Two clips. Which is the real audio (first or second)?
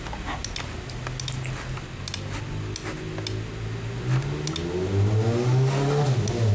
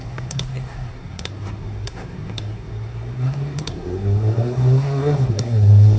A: first